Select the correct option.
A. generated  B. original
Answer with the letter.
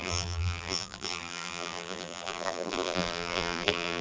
A